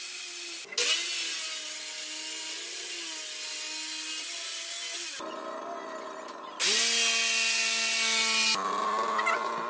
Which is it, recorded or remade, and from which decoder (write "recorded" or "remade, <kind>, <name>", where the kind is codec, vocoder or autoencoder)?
recorded